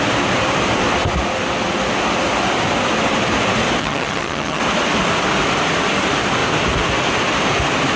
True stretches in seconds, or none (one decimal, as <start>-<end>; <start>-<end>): 0.0-3.8; 4.6-8.0